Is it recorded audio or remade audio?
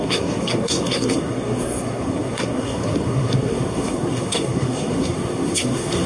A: remade